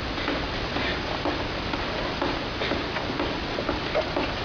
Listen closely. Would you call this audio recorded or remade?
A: recorded